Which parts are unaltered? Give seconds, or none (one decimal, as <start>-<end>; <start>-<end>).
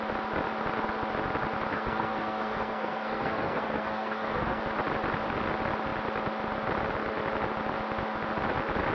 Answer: 0.0-1.7; 4.6-8.9